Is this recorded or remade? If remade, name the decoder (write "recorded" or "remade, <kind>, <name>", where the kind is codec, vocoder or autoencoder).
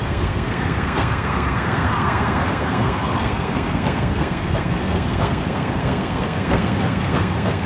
remade, codec, SNAC